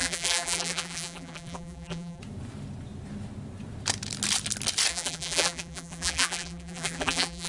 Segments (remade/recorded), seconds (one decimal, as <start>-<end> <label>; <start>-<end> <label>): 0.0-2.2 remade; 2.2-4.9 recorded; 4.9-7.5 remade